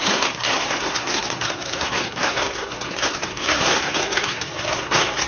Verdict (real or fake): fake